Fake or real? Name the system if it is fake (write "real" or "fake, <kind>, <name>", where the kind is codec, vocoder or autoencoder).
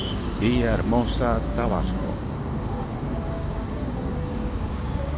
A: fake, codec, DAC